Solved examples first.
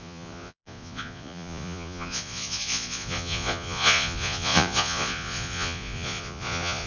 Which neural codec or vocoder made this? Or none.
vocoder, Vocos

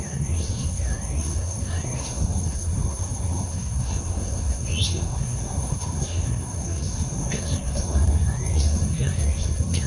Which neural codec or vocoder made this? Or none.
codec, SNAC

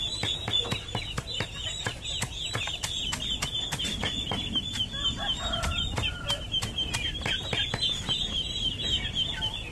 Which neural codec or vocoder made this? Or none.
none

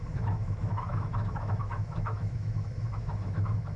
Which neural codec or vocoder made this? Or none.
autoencoder, DAC-VAE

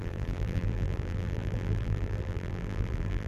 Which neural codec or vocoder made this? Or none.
vocoder, BigVGAN v2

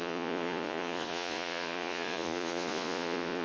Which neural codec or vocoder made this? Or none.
vocoder, Vocos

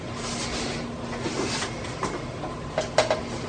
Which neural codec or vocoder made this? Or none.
none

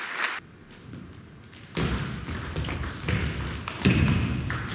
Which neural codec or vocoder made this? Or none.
none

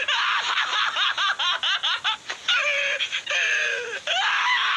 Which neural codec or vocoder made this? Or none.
none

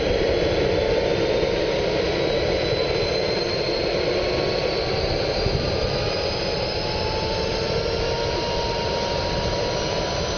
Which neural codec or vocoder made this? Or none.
none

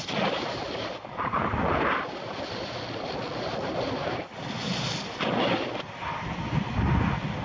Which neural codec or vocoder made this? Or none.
none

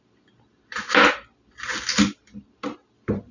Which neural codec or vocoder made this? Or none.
none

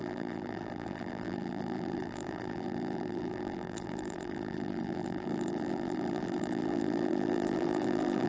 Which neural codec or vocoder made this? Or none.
vocoder, BigVGAN v2